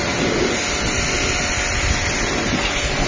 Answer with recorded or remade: recorded